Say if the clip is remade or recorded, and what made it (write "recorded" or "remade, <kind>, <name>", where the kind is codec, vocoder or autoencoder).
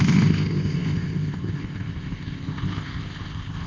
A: remade, codec, ZipCodec